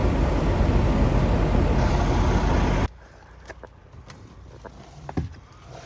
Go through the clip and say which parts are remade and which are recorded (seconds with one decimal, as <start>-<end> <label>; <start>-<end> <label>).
0.0-5.9 recorded